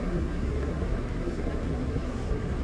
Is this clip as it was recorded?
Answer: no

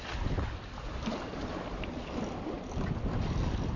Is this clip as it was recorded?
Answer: yes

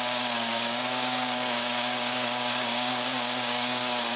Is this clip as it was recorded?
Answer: no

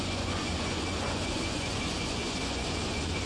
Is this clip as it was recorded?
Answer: no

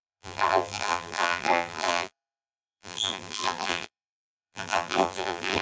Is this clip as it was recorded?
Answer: no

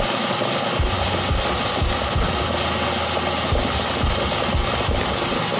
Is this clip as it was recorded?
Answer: yes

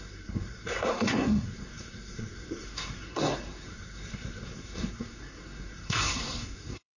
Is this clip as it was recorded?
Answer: no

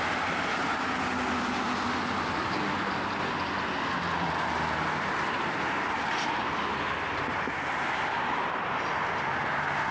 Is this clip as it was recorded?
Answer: yes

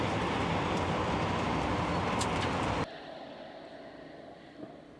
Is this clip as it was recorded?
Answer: yes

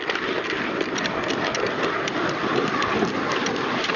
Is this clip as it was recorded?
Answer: yes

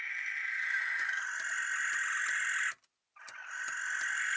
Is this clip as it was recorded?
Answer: yes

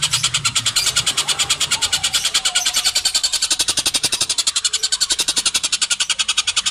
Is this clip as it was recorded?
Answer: no